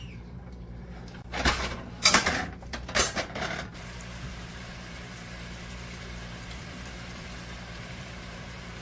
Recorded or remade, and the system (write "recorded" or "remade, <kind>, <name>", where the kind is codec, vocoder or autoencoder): remade, vocoder, BigVGAN v2